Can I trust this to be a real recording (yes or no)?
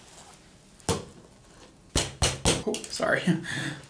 yes